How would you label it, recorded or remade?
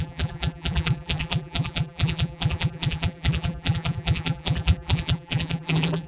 remade